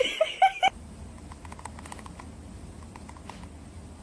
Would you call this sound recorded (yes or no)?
yes